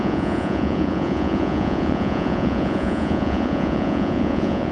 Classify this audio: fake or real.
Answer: fake